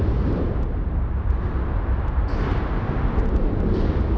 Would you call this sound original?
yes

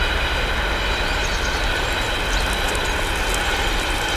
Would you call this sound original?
yes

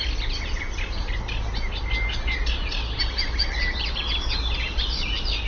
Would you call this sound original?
yes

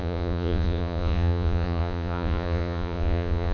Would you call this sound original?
no